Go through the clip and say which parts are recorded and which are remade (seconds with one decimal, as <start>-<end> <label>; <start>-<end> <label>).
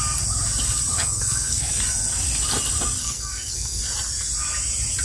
0.0-0.9 recorded; 0.9-1.7 remade; 1.7-3.0 recorded; 3.0-3.8 remade; 3.8-5.0 recorded